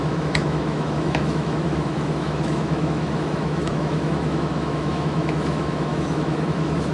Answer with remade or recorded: remade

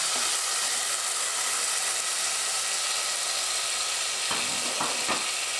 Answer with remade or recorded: recorded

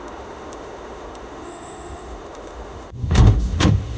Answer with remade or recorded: remade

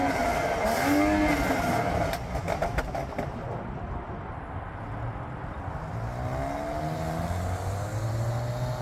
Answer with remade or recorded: recorded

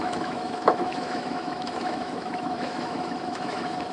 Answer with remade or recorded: remade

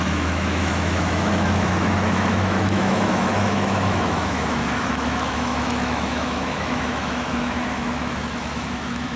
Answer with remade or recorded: remade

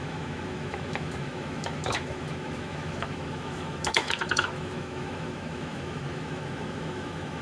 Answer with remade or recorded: remade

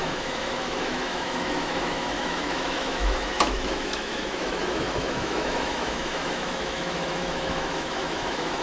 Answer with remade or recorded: remade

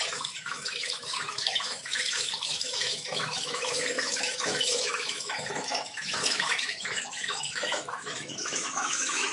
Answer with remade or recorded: remade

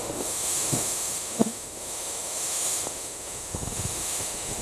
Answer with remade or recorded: remade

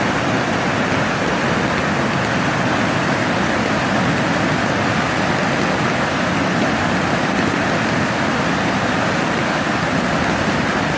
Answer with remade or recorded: recorded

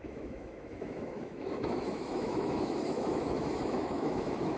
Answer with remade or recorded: remade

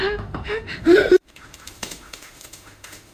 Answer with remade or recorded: remade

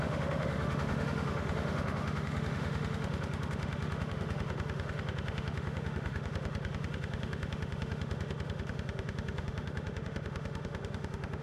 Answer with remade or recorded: remade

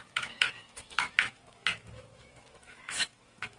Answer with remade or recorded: remade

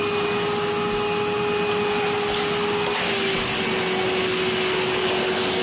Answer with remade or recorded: recorded